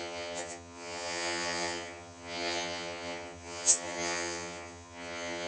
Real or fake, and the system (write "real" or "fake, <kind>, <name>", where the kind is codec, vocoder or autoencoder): fake, vocoder, HiFi-GAN